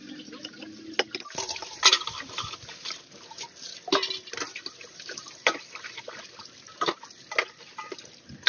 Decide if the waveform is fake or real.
real